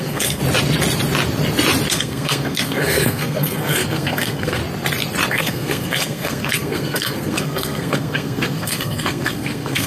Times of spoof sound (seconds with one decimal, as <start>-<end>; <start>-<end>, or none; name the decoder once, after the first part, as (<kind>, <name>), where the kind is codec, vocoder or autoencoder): 0.0-0.4 (codec, SNAC); 1.9-4.6; 5.3-9.9